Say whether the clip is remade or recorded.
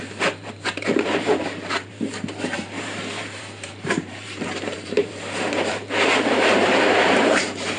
remade